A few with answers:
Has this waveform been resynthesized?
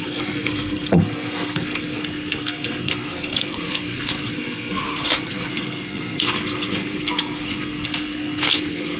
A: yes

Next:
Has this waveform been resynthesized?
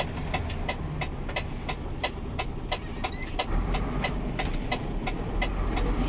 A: no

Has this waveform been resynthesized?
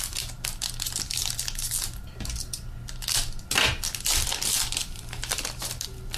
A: no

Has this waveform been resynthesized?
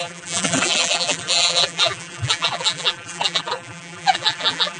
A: yes